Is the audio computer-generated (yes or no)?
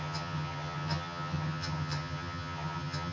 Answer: yes